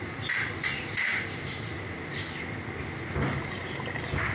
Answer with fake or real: real